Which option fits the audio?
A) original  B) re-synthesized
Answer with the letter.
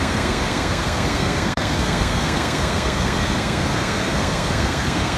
B